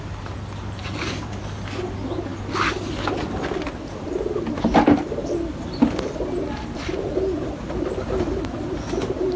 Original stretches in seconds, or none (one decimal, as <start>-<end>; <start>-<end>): 0.0-0.8; 1.3-9.4